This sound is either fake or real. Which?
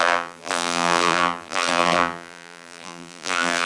fake